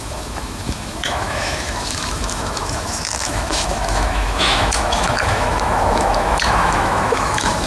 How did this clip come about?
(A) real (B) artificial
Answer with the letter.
B